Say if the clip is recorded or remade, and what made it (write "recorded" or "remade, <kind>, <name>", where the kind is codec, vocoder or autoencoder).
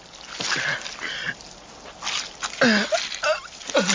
recorded